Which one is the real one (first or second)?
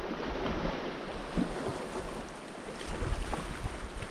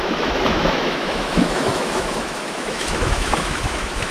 first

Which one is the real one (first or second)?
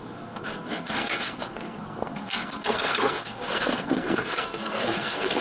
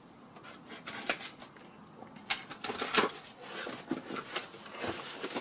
second